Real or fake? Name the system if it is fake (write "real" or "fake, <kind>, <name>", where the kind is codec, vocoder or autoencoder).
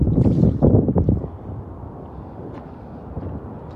real